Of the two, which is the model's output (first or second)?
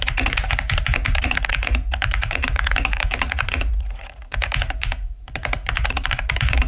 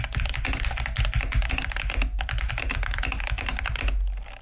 first